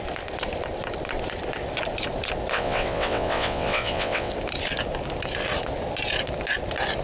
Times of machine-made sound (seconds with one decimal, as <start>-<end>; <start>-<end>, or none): 2.5-4.3